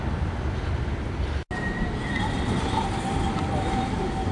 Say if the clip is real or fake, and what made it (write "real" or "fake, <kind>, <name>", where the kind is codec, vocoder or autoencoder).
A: real